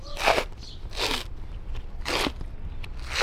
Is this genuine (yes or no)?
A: yes